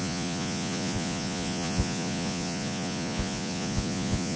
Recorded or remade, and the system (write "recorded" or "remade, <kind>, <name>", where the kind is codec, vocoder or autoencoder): remade, vocoder, Vocos